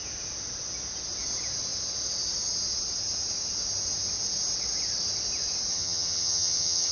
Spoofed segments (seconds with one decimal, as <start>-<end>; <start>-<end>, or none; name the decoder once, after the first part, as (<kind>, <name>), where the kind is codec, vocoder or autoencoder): 5.7-6.9 (vocoder, HiFi-GAN)